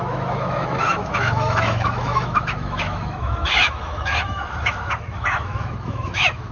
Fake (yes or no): yes